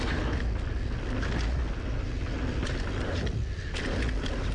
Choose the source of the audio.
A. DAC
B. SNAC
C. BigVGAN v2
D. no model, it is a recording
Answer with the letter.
D